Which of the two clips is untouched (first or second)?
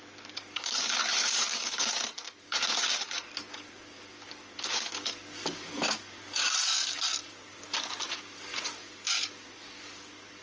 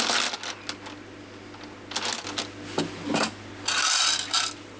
second